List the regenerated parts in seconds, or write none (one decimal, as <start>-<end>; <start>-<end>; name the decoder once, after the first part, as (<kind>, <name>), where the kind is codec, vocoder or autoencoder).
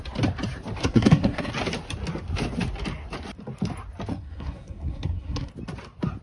0.8-1.5 (codec, SNAC); 4.1-5.5